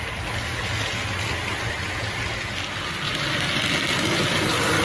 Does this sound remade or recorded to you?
recorded